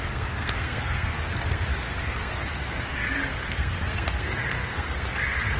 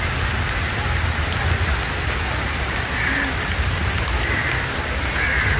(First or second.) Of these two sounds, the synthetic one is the first